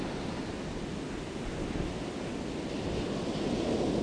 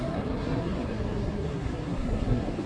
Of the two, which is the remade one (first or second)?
second